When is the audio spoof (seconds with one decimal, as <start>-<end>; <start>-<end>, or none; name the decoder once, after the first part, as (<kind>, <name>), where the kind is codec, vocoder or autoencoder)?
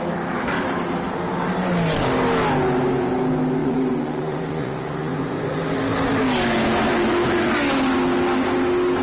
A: 3.6-5.6 (vocoder, Vocos)